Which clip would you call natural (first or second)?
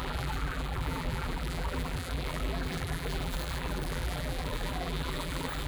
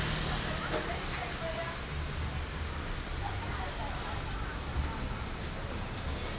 second